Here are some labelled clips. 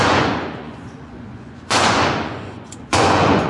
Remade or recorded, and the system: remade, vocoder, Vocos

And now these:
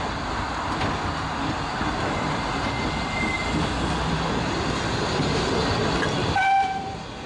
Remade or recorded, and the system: recorded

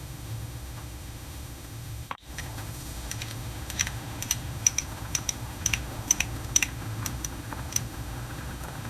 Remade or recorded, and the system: remade, autoencoder, DAC-VAE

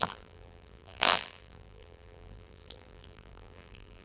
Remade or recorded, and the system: remade, vocoder, BigVGAN v2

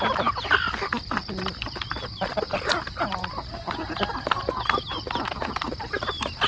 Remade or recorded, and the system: recorded